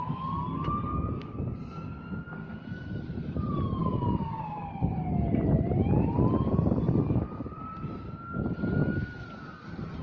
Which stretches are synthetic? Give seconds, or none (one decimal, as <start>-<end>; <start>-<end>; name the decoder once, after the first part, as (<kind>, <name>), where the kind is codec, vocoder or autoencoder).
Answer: 0.9-1.4 (codec, DAC); 3.8-4.9